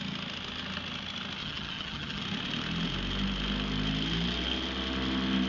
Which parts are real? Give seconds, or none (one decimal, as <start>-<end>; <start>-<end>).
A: 0.0-1.4; 2.2-5.5